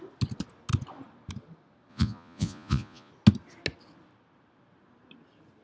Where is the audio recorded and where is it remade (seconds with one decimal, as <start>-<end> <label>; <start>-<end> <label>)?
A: 0.0-1.9 recorded; 1.9-3.1 remade; 3.1-5.6 recorded